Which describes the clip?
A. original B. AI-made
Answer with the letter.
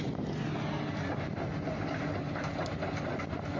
A